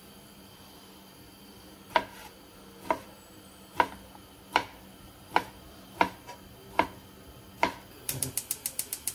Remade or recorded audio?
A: recorded